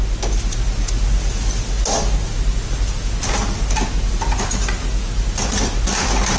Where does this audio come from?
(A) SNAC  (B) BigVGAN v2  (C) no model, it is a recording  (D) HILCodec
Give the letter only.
C